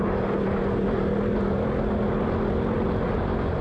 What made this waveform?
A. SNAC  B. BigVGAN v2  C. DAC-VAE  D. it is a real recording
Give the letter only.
D